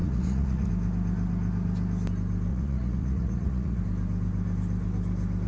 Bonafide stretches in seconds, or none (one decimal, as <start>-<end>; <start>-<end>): 0.7-2.5; 3.8-5.5